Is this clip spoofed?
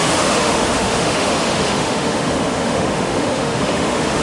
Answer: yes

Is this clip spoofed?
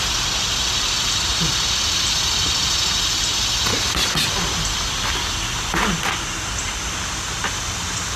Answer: no